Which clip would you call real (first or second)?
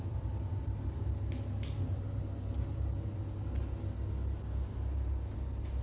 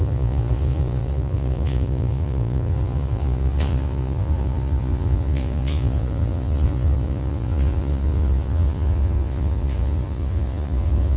first